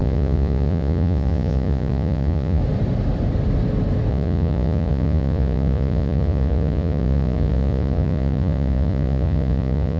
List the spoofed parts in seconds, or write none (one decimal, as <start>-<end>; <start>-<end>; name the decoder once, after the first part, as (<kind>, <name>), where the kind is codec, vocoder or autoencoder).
0.0-2.6 (vocoder, Vocos); 4.1-10.0